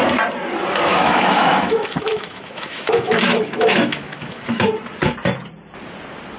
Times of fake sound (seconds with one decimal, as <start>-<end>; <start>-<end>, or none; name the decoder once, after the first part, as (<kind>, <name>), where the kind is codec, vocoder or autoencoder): 0.9-4.6 (autoencoder, DAC-VAE)